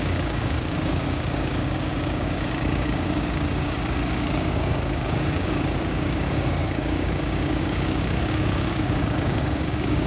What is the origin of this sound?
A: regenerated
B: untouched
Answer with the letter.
A